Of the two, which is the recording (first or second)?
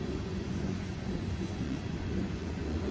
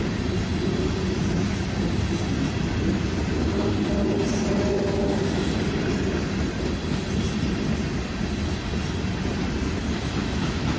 second